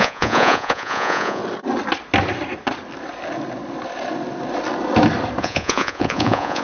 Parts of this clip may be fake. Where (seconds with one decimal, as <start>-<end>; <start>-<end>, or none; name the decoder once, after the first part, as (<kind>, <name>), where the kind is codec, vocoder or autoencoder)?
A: 0.0-1.4 (vocoder, Vocos); 5.4-6.6